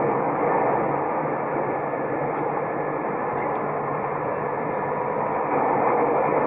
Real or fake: real